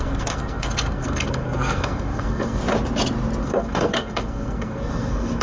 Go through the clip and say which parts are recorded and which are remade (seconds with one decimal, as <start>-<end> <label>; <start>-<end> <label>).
0.0-2.6 remade; 2.6-3.4 recorded; 3.4-5.4 remade